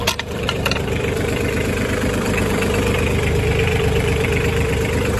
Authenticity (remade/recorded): remade